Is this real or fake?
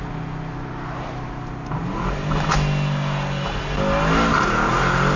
real